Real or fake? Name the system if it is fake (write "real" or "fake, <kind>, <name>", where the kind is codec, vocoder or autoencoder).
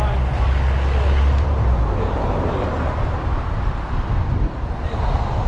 real